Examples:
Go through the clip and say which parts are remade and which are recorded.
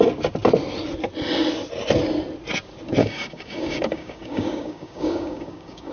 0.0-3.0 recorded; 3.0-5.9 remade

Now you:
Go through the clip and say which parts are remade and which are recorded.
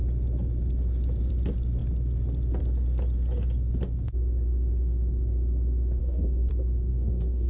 0.0-6.0 recorded; 6.0-6.5 remade; 6.5-6.9 recorded; 6.9-7.5 remade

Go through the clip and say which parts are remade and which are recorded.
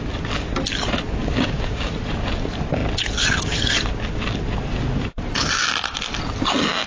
0.0-1.2 recorded; 1.2-1.9 remade; 1.9-6.9 recorded